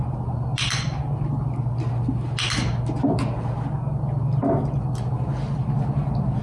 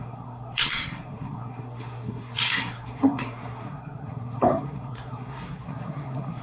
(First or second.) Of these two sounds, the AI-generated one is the second